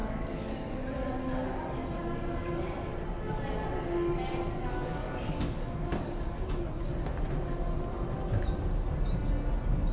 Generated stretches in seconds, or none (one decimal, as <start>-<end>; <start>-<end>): 0.0-0.8; 4.6-7.0